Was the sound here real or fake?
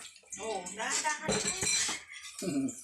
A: real